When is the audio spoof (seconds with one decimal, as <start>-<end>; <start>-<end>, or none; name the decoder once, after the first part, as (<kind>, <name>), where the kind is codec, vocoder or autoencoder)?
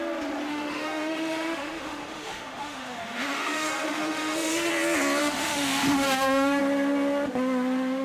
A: 0.5-4.7 (autoencoder, DAC-VAE); 5.2-6.6